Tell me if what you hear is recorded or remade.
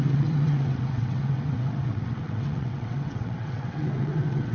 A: remade